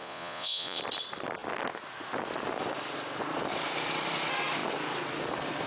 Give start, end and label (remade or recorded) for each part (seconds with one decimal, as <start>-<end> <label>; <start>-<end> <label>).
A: 0.0-0.8 remade; 0.8-5.7 recorded